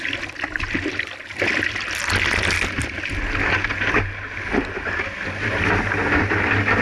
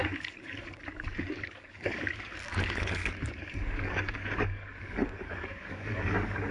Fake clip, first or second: second